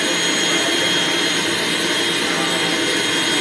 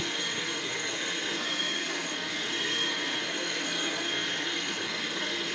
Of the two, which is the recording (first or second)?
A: first